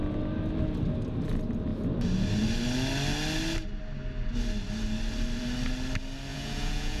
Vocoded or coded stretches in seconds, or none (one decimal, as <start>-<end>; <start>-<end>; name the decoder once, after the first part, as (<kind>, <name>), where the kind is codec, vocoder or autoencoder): 6.3-7.0 (vocoder, Vocos)